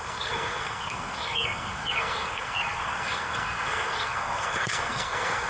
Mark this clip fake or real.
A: fake